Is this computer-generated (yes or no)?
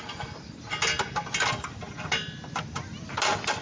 no